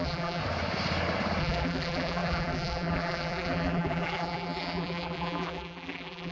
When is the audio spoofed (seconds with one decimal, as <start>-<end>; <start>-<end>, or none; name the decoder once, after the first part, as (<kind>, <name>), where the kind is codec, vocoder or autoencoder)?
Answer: 0.0-0.4 (vocoder, BigVGAN v2); 1.4-6.3